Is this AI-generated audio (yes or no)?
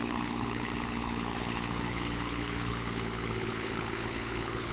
yes